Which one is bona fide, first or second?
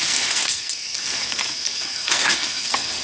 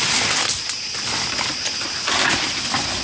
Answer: second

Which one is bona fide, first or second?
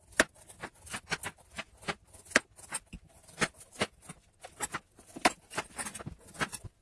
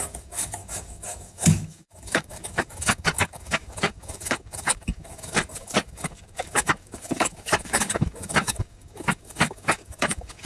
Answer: first